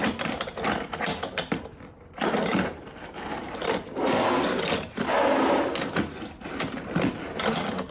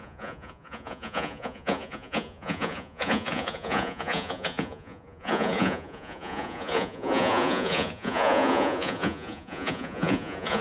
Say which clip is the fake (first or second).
second